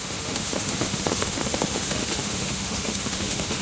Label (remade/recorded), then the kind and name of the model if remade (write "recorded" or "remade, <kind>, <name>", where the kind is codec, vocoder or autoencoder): remade, autoencoder, DAC-VAE